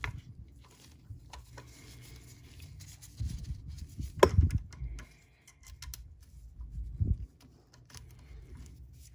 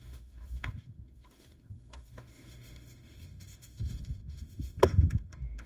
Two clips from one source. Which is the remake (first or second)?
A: second